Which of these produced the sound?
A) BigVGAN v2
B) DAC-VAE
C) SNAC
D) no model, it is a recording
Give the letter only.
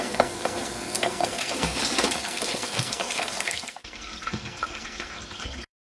C